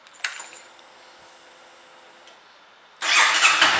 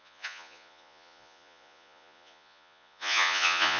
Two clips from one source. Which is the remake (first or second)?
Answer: second